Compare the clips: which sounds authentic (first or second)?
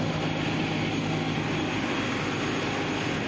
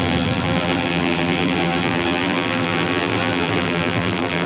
first